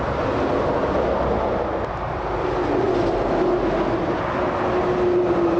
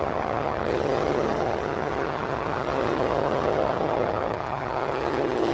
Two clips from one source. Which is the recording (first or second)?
first